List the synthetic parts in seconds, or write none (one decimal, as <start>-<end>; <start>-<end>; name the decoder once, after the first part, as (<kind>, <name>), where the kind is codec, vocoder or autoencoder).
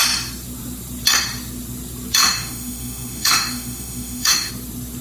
2.2-4.5 (autoencoder, DAC-VAE)